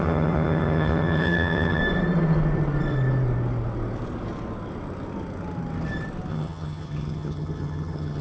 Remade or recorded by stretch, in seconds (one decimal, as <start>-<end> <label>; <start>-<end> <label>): 0.0-1.8 remade; 1.8-6.3 recorded; 6.3-8.2 remade